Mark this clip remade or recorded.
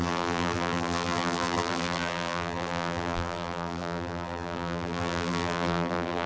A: remade